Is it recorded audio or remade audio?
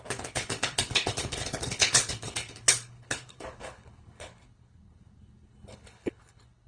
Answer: remade